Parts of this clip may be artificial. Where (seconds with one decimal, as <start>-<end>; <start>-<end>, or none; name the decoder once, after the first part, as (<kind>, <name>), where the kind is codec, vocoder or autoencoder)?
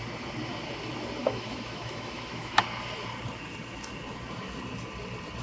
1.2-2.6 (autoencoder, DAC-VAE)